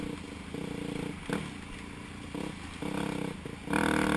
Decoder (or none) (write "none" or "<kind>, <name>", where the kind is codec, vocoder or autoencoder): none